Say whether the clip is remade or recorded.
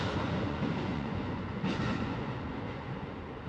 remade